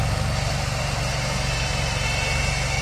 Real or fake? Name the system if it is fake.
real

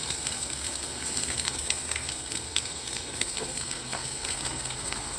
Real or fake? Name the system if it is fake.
fake, codec, SNAC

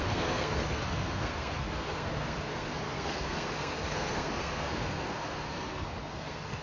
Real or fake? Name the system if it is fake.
fake, codec, SNAC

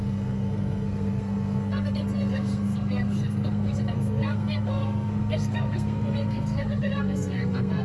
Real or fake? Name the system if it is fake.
fake, codec, SNAC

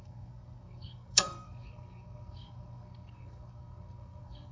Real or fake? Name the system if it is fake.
fake, codec, SNAC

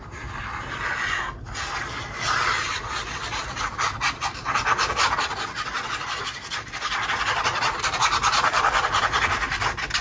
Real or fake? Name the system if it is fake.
real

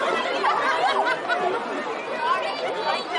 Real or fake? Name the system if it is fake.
real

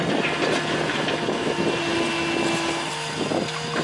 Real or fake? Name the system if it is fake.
real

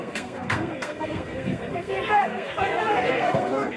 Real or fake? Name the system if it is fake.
fake, codec, SNAC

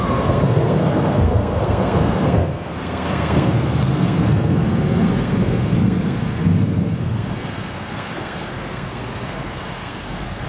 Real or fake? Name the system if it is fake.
fake, codec, SNAC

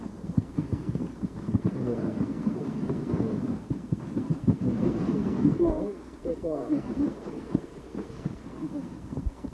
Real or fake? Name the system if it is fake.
fake, codec, SNAC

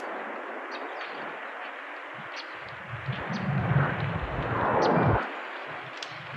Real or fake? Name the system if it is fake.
real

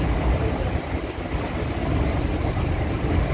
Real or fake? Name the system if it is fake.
real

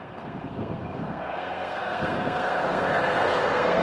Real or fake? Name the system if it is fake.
fake, codec, SNAC